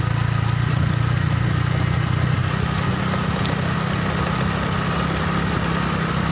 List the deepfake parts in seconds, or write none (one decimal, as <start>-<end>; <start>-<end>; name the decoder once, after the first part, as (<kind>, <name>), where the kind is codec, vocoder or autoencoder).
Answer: none